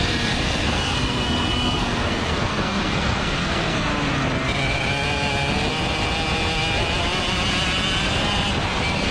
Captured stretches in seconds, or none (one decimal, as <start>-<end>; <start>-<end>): 3.9-9.1